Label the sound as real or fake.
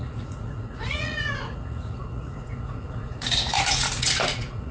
fake